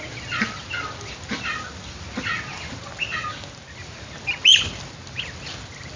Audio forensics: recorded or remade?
recorded